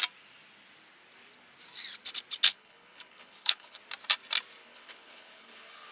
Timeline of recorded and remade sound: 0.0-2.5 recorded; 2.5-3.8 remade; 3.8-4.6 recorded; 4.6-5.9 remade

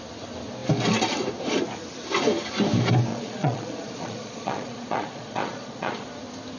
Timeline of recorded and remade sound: 0.0-3.1 recorded; 3.1-6.1 remade; 6.1-6.6 recorded

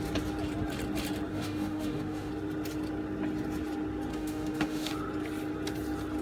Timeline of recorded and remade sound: 0.0-1.3 recorded; 1.3-2.3 remade; 2.3-4.1 recorded; 4.1-4.9 remade; 4.9-6.2 recorded

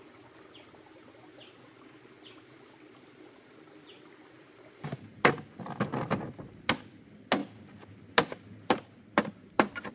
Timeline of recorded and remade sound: 0.0-9.9 recorded